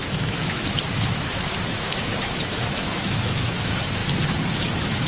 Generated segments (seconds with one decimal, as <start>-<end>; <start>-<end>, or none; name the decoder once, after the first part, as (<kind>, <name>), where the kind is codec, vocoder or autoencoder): 0.0-4.0 (autoencoder, DAC-VAE); 4.6-5.1